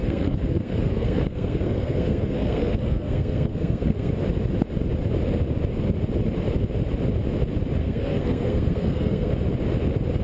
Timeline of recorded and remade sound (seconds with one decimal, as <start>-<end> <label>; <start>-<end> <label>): 0.0-4.1 remade; 4.1-7.8 recorded; 7.8-9.3 remade; 9.3-10.2 recorded